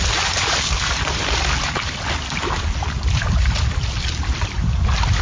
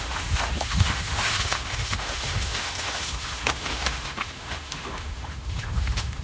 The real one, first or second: first